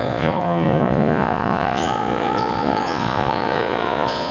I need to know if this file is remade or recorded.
remade